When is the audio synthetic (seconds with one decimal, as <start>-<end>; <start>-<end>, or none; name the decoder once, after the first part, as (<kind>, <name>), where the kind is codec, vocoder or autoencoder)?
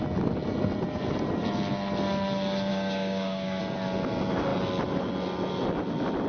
2.7-3.6 (codec, DAC)